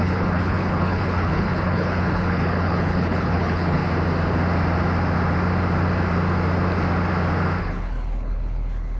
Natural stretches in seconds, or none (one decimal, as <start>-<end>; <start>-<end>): 3.8-7.6